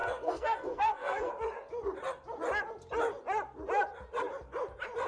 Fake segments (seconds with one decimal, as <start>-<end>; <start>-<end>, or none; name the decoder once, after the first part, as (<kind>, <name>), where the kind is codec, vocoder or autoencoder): 0.0-1.3 (codec, SNAC)